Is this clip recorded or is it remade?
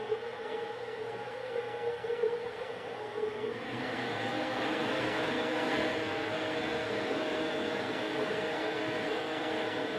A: remade